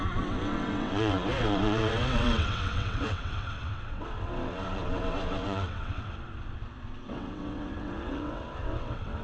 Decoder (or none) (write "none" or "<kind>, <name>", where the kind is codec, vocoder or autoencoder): vocoder, WaveNeXt